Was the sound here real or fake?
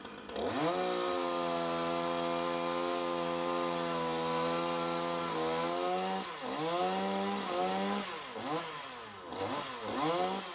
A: real